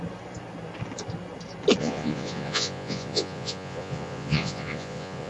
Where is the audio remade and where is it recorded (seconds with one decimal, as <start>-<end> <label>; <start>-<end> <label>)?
0.0-1.8 recorded; 1.8-5.3 remade